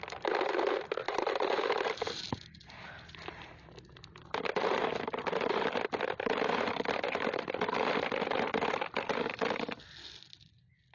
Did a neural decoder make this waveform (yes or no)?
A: no